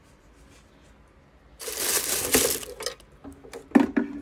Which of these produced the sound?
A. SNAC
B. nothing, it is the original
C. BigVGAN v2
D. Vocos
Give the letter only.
B